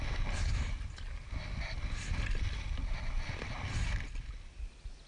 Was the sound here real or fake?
real